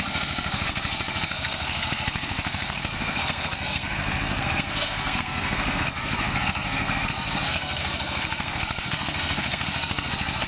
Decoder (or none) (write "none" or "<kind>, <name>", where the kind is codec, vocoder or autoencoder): codec, SNAC